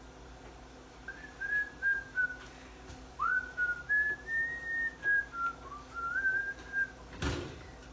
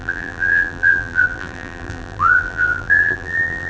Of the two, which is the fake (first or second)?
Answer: second